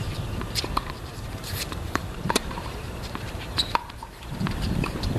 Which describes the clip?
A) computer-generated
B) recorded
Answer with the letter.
A